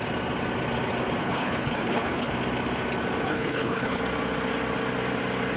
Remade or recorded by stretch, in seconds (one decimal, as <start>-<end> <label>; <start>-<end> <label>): 0.0-1.2 recorded; 1.2-2.3 remade; 2.3-3.3 recorded; 3.3-4.0 remade; 4.0-5.6 recorded